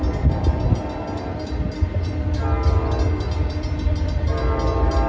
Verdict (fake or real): real